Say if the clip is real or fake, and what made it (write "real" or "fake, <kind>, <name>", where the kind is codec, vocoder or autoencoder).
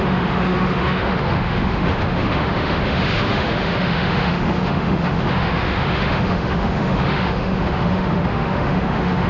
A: fake, autoencoder, DAC-VAE